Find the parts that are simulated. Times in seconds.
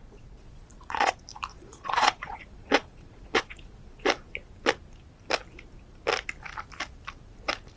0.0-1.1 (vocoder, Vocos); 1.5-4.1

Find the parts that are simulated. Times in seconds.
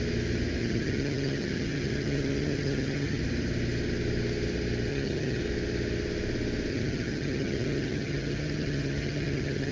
0.6-3.2 (vocoder, HiFi-GAN); 4.9-5.4; 6.7-9.7